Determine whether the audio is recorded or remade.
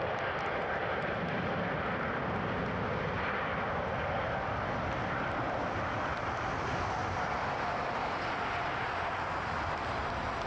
recorded